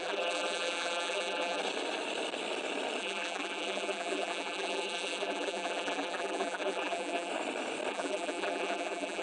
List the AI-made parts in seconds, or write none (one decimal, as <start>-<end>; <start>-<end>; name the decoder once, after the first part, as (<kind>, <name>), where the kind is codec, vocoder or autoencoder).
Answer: 0.0-1.6 (vocoder, BigVGAN v2); 3.0-7.3; 7.9-9.2